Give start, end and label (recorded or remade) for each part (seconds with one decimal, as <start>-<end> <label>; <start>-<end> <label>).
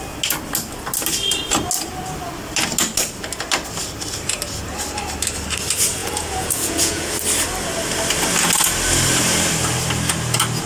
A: 0.0-6.0 recorded; 6.0-7.2 remade; 7.2-10.7 recorded